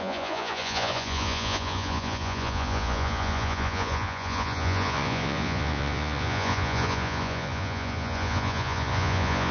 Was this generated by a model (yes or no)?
yes